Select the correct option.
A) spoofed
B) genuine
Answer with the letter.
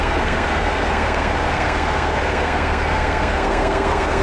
A